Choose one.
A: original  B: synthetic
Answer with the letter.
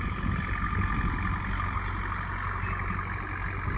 A